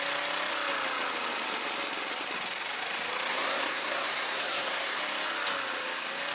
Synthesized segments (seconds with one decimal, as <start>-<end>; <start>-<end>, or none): 3.3-5.0